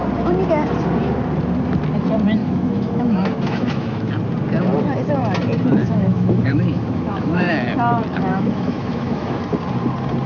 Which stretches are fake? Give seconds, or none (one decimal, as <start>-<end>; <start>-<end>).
2.4-4.1; 5.8-7.5; 8.3-9.4